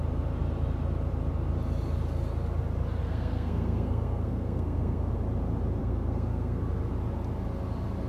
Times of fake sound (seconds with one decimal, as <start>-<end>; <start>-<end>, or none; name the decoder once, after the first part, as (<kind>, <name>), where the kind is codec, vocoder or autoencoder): 3.0-5.1 (codec, SNAC); 5.8-6.6